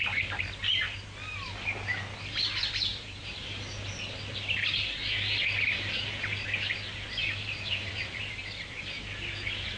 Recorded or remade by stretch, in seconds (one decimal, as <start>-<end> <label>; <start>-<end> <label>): 0.0-2.9 recorded; 2.9-3.7 remade; 3.7-7.2 recorded; 7.2-8.8 remade; 8.8-9.8 recorded